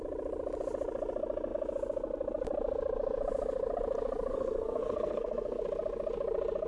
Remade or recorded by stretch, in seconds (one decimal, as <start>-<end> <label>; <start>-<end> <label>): 0.0-4.3 recorded; 4.3-5.6 remade; 5.6-6.7 recorded